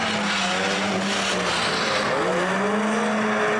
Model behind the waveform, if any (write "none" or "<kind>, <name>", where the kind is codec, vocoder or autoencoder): none